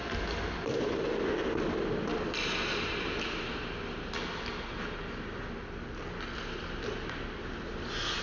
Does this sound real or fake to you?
real